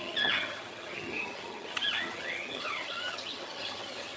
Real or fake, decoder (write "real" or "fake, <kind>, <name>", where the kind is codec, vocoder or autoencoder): fake, vocoder, HiFi-GAN